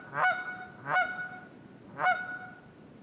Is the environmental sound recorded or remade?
recorded